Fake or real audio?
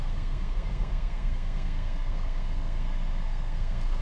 fake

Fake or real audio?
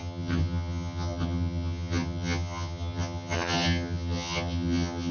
fake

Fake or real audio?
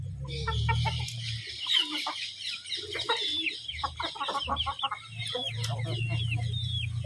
real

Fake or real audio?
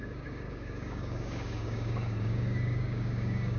fake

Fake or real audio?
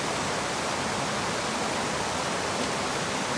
real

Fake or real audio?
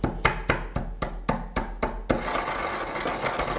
real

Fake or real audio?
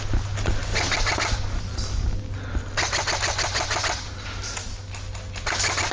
real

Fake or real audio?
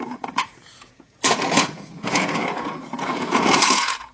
fake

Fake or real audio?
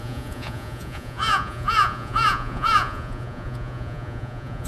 fake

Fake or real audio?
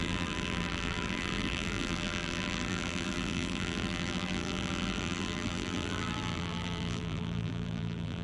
fake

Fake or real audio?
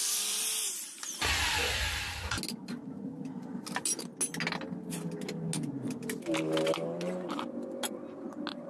real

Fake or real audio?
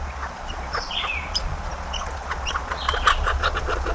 fake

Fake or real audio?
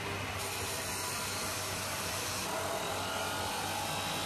real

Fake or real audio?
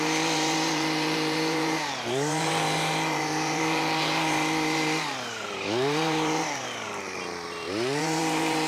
fake